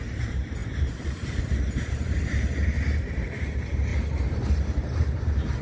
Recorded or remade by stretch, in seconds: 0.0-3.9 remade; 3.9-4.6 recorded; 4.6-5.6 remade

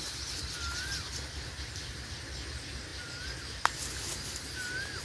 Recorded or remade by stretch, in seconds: 0.0-5.0 recorded

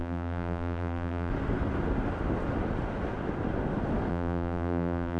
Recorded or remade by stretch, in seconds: 0.0-1.3 remade; 1.3-4.1 recorded; 4.1-5.2 remade

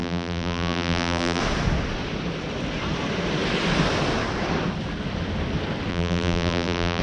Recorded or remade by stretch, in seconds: 0.0-1.4 remade; 1.4-5.9 recorded; 5.9-7.0 remade